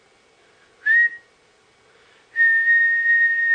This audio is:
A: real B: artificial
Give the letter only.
A